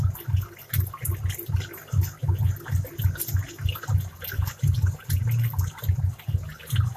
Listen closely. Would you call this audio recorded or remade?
recorded